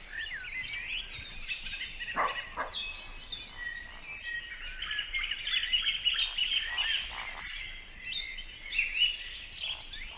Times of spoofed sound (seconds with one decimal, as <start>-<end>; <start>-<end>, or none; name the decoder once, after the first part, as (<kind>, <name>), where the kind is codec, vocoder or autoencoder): none